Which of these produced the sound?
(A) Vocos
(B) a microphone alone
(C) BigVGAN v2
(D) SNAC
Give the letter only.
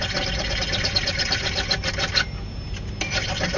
C